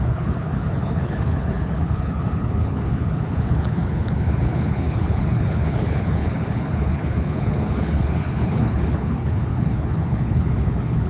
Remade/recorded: remade